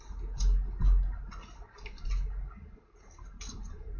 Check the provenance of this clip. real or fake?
real